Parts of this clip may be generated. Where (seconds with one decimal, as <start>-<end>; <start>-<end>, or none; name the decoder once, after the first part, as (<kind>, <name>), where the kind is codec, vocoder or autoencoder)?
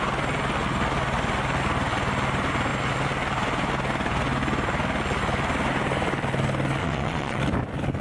6.8-7.4 (vocoder, Vocos)